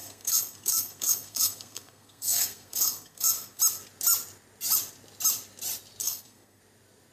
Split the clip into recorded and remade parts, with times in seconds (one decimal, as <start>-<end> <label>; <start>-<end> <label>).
0.0-3.6 remade; 3.6-6.0 recorded; 6.0-6.6 remade; 6.6-7.1 recorded